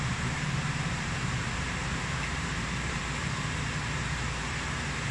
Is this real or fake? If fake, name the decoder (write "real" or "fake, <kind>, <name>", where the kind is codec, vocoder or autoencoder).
fake, vocoder, BigVGAN v2